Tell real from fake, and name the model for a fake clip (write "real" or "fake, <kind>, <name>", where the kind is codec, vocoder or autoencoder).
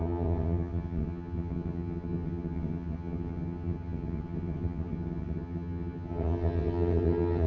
fake, vocoder, HiFi-GAN